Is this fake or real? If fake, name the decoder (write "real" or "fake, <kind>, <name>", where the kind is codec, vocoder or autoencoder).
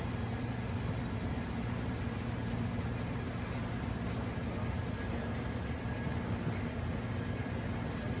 real